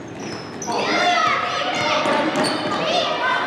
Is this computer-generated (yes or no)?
no